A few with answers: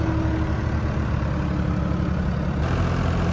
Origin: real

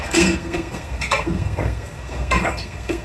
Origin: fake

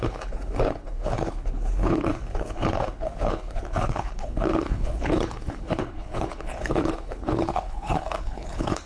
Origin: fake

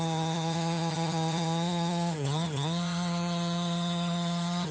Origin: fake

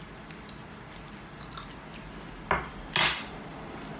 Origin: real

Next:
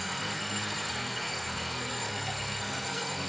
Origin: fake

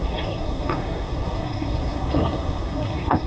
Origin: fake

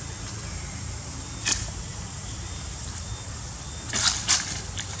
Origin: real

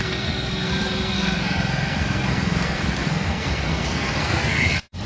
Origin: fake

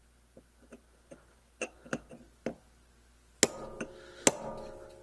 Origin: real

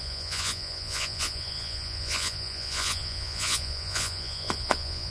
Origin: fake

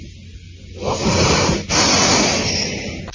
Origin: real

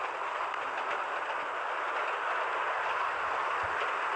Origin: real